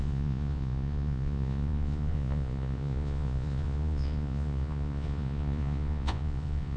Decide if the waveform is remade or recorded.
remade